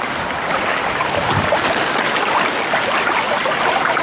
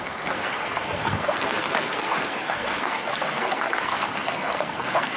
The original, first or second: first